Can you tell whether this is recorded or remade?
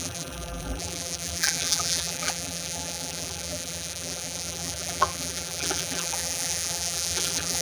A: remade